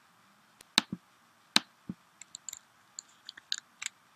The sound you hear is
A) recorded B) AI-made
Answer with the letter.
A